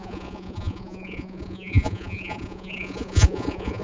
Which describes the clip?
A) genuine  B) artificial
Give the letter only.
B